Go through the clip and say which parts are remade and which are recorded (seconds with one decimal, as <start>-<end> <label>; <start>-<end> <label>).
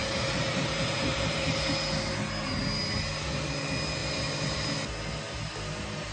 0.0-1.6 remade; 1.6-4.0 recorded; 4.0-4.7 remade; 4.7-6.1 recorded